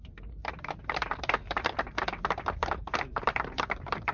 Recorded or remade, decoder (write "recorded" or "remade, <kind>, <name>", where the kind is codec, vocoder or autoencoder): remade, vocoder, BigVGAN v2